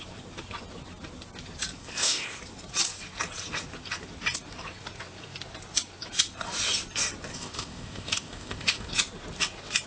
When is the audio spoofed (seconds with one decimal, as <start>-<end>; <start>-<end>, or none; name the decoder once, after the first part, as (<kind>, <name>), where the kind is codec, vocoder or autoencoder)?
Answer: 1.8-2.4 (codec, ZipCodec); 7.3-8.9